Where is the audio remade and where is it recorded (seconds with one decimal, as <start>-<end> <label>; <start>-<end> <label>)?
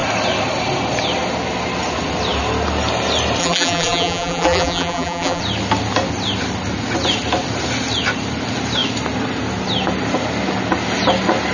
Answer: 0.0-3.4 recorded; 3.4-5.4 remade; 5.4-11.5 recorded